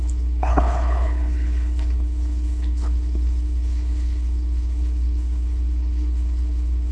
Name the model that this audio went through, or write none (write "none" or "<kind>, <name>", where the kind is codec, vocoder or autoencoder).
codec, HILCodec